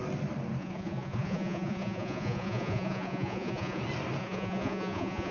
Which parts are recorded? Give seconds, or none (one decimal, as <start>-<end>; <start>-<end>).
0.0-0.6; 3.8-4.2

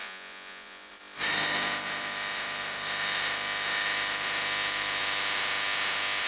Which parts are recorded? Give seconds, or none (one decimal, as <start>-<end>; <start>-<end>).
0.9-6.3